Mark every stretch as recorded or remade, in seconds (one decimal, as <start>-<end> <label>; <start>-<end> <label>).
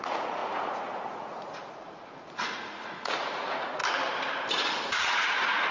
0.0-3.8 remade; 3.8-4.9 recorded; 4.9-5.7 remade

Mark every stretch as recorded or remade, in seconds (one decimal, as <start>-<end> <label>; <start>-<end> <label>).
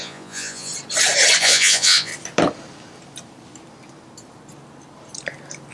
0.0-0.7 remade; 0.7-1.4 recorded; 1.4-2.1 remade; 2.1-5.7 recorded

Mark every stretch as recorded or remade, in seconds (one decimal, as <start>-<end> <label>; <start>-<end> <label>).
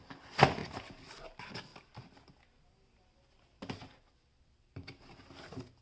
0.0-5.8 recorded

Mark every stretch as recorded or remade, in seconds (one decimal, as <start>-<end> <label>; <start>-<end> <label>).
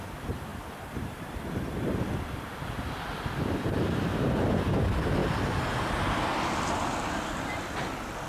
0.0-0.5 recorded; 0.5-4.0 remade; 4.0-5.2 recorded; 5.2-5.9 remade; 5.9-8.3 recorded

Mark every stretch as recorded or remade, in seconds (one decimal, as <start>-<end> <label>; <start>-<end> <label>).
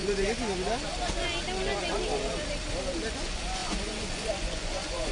0.0-3.1 recorded; 3.1-5.1 remade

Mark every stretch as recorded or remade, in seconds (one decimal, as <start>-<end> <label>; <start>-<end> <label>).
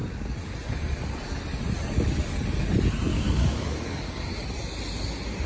0.0-3.1 recorded; 3.1-4.1 remade; 4.1-5.5 recorded